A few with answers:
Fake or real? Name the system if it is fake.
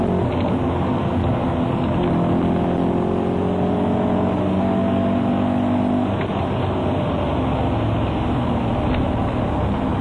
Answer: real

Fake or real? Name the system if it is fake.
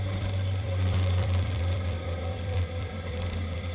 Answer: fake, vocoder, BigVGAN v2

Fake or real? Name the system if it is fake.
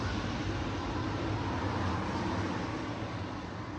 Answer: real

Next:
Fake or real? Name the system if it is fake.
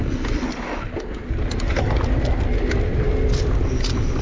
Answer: real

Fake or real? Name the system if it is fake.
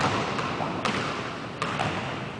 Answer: real